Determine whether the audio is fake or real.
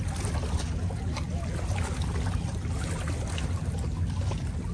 real